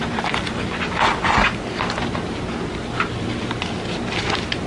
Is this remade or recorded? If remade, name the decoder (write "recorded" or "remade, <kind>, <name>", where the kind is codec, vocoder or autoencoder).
recorded